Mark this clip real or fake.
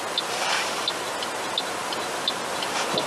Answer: real